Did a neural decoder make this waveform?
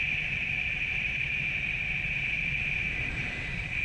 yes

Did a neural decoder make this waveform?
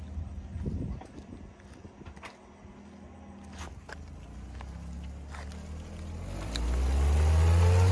no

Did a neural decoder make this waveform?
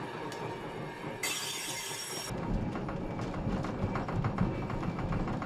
no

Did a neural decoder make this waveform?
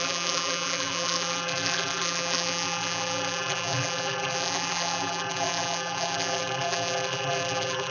yes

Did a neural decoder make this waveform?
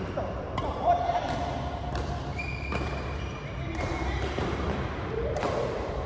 yes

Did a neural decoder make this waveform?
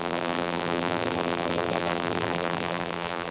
yes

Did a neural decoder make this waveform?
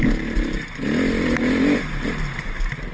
no